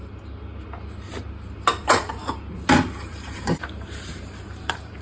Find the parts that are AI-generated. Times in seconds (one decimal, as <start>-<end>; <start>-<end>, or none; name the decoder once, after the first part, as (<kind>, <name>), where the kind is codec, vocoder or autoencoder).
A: 3.0-5.0 (vocoder, BigVGAN v2)